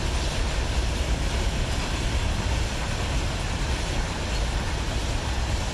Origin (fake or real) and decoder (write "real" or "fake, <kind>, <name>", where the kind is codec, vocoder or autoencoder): real